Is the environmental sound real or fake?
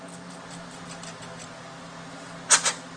real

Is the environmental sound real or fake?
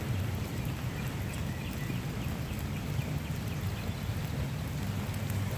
real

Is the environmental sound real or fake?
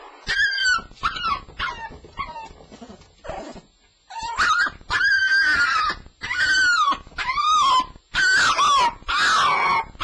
real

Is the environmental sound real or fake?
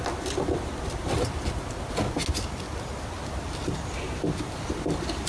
real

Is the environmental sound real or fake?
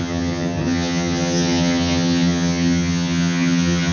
fake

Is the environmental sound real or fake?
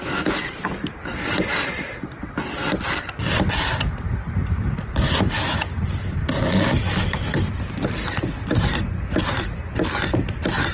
real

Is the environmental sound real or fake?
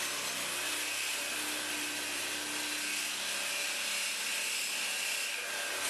real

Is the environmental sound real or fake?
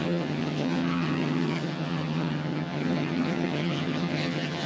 fake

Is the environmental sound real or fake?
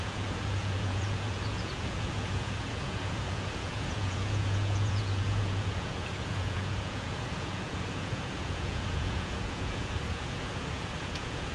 fake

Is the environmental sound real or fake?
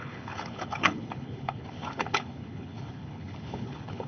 fake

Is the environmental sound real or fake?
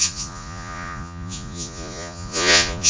fake